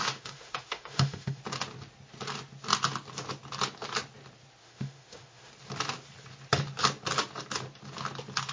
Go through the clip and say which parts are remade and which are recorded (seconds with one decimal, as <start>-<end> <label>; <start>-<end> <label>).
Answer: 0.0-1.4 remade; 1.4-4.6 recorded; 4.6-5.5 remade; 5.5-8.5 recorded